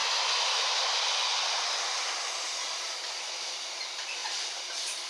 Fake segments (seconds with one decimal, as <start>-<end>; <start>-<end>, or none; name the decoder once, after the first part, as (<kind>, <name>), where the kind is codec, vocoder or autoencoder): none